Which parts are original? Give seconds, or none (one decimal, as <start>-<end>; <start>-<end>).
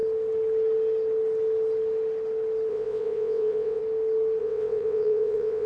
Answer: 0.0-2.7; 3.8-4.4